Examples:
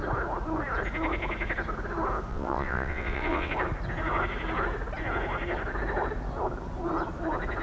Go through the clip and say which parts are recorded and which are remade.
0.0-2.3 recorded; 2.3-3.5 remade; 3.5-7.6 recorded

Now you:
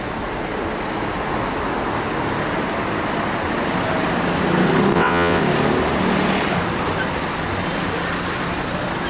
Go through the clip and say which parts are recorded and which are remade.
0.0-4.9 recorded; 4.9-5.4 remade; 5.4-9.1 recorded

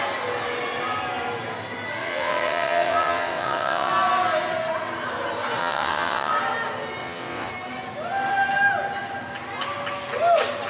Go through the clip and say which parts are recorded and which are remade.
0.0-2.0 recorded; 2.0-3.9 remade; 3.9-5.6 recorded; 5.6-6.3 remade; 6.3-7.0 recorded; 7.0-7.5 remade; 7.5-10.7 recorded